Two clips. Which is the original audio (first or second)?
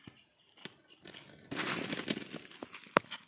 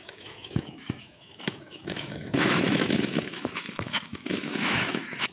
first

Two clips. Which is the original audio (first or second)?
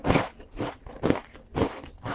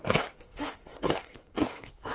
first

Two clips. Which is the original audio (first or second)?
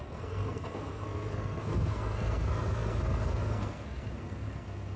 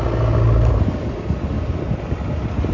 second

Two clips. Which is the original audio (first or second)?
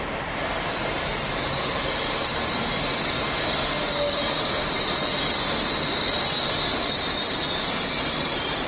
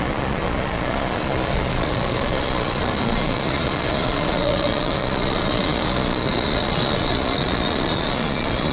first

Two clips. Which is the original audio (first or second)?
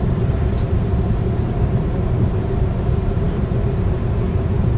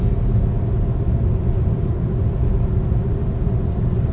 second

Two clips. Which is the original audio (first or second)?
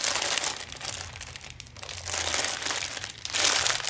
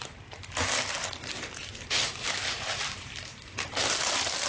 first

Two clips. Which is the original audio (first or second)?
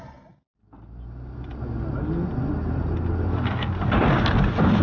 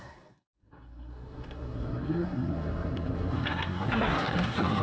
first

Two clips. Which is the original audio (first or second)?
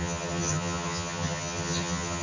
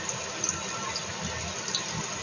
second